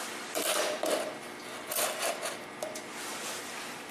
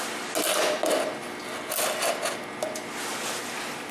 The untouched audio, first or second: second